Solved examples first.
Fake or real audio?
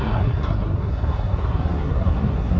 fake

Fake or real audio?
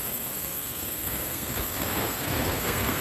fake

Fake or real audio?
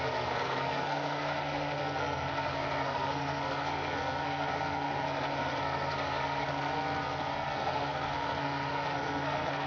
fake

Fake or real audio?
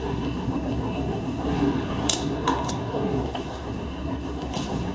fake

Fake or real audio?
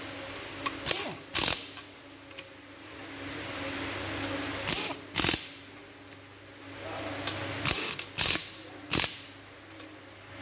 real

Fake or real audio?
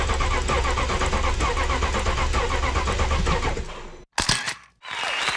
real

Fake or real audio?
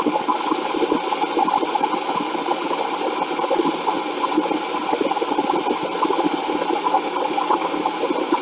real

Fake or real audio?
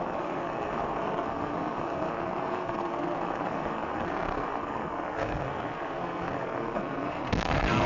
fake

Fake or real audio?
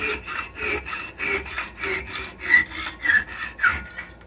real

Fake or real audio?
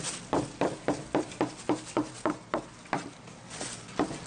real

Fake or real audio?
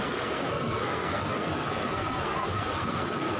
fake